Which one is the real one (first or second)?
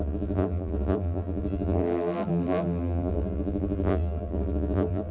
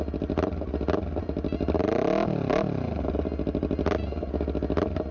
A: second